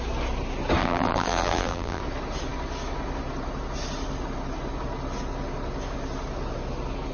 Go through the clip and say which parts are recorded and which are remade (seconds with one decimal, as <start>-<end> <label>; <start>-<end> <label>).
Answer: 0.0-0.8 recorded; 0.8-2.0 remade; 2.0-7.1 recorded